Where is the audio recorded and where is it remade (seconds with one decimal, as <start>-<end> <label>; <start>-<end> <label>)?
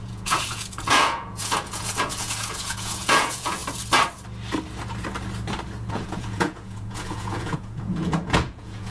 0.0-3.6 remade; 3.6-5.9 recorded; 5.9-8.9 remade